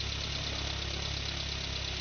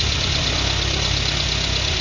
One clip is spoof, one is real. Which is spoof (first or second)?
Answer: second